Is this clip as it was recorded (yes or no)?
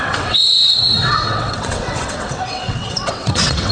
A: no